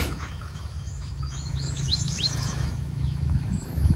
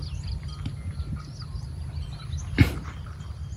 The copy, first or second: first